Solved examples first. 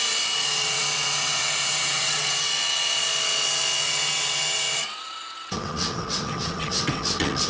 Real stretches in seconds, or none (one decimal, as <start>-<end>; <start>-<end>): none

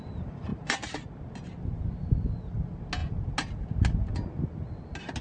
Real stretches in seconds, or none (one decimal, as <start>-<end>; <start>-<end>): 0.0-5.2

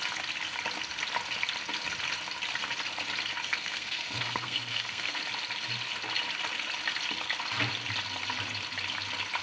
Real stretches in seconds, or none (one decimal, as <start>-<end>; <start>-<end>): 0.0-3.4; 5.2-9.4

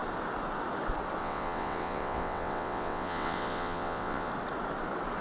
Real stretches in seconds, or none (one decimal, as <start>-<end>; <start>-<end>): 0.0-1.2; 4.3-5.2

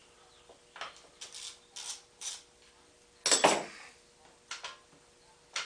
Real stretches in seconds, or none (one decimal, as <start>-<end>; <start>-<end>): 0.0-5.7

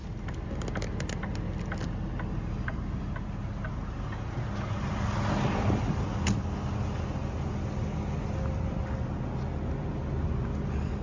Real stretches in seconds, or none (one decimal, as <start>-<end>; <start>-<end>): 0.0-11.0

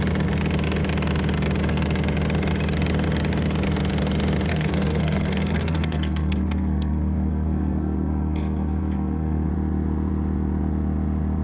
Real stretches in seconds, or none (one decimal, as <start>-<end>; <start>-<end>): 0.0-4.5; 9.5-11.4